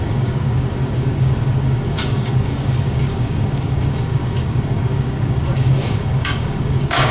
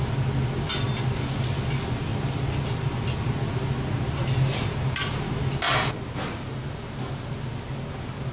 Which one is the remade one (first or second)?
first